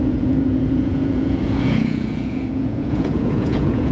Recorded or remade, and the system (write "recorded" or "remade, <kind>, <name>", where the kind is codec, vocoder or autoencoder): remade, vocoder, Vocos